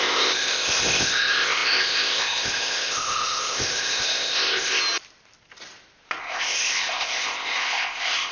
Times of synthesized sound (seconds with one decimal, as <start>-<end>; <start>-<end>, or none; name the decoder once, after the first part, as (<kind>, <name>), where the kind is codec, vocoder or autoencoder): 0.0-4.8 (codec, ZipCodec); 6.2-8.3